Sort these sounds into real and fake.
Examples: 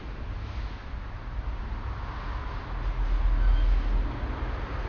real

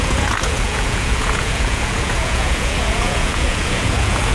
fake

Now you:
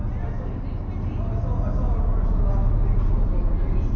real